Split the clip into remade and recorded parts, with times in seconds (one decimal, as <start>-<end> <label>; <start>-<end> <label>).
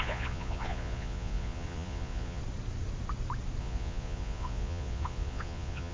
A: 0.0-2.4 remade; 2.4-3.6 recorded; 3.6-5.9 remade